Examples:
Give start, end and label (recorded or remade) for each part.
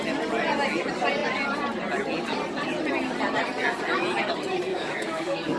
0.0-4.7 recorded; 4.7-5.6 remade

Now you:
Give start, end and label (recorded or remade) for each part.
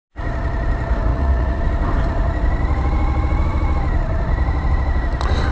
0.0-1.1 recorded; 1.1-1.6 remade; 1.6-5.5 recorded